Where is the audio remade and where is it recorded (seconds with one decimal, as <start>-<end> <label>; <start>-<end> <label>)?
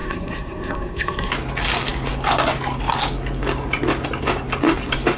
0.0-1.3 remade; 1.3-5.2 recorded